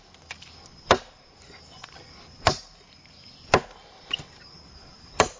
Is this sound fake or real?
real